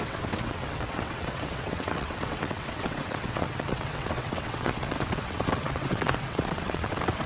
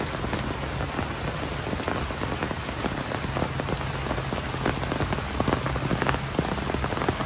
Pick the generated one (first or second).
first